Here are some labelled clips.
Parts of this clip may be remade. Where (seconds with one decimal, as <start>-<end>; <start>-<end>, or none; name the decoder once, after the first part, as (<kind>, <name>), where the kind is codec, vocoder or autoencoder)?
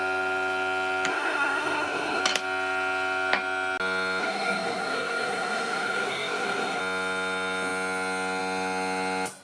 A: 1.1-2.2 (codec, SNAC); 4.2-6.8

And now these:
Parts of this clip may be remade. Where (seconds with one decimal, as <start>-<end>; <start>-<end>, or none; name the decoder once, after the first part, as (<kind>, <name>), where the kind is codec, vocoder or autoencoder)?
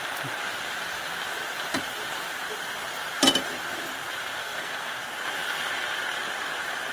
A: 4.4-5.0 (codec, SNAC)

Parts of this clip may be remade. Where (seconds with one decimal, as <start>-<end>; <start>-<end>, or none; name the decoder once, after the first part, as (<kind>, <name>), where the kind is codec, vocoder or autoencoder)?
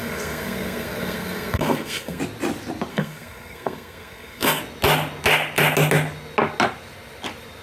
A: 0.0-2.2 (codec, SNAC); 2.9-4.6